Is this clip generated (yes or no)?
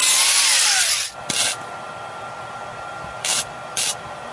no